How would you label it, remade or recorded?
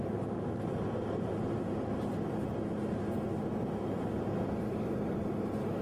recorded